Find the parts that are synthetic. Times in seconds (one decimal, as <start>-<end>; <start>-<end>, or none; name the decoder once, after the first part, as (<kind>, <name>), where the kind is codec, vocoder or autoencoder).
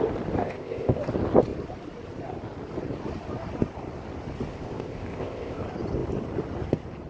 0.4-1.0 (codec, ZipCodec); 4.5-5.6